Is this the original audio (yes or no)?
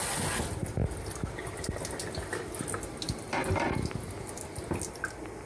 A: yes